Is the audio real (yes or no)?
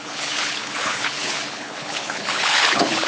no